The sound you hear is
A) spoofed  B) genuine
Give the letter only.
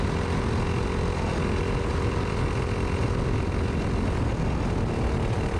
B